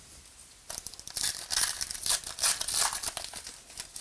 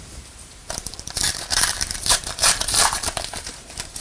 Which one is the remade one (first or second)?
second